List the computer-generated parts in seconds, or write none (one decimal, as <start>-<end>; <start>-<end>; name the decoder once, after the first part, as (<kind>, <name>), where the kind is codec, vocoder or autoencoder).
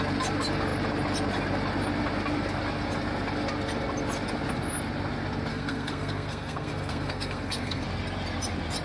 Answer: 5.5-7.8 (codec, SNAC)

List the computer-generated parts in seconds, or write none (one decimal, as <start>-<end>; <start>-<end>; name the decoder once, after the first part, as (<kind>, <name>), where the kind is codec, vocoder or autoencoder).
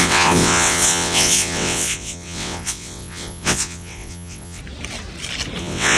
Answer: 0.0-4.6 (vocoder, WaveNeXt); 5.6-6.0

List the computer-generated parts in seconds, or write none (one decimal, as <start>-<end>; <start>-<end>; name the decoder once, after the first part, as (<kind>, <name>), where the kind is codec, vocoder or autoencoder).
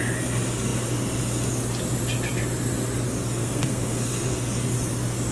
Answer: 3.4-4.3 (codec, SNAC)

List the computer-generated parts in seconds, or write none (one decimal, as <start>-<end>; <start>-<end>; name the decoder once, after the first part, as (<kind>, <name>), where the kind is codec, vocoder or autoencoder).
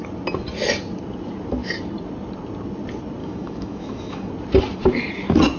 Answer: 3.2-4.3 (autoencoder, DAC-VAE)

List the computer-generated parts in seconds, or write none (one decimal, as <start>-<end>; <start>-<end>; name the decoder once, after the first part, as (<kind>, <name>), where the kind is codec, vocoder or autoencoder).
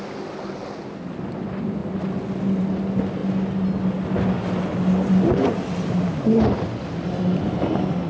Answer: none